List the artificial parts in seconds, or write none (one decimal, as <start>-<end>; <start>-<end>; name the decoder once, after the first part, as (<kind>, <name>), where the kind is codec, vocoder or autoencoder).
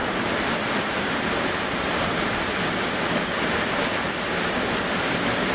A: 0.0-3.1 (vocoder, BigVGAN v2)